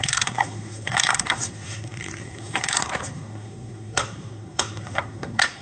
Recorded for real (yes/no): no